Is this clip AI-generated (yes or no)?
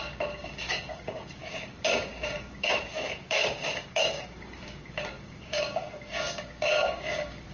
yes